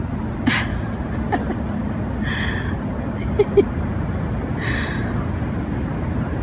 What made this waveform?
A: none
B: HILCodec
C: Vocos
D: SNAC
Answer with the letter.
A